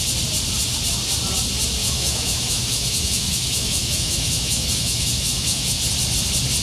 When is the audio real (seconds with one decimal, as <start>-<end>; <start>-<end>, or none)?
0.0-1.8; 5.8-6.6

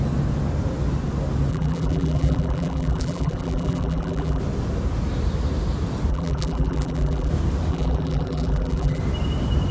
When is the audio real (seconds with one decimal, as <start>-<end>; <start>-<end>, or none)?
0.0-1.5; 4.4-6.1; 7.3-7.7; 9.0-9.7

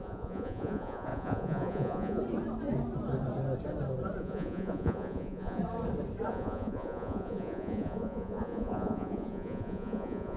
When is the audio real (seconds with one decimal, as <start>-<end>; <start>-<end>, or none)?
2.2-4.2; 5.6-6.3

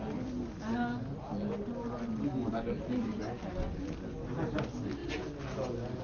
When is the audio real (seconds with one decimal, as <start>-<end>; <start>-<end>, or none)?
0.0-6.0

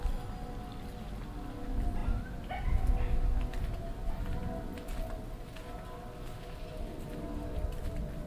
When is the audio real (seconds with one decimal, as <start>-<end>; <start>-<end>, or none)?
0.0-8.3